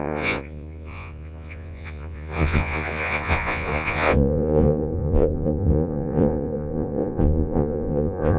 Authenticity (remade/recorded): remade